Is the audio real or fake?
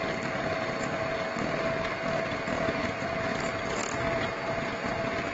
fake